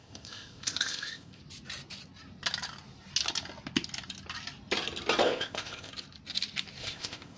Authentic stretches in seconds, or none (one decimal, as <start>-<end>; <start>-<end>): 1.4-5.2; 5.9-6.8